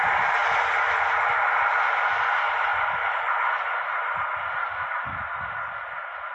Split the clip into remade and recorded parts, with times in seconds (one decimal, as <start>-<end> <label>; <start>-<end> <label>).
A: 0.0-6.3 recorded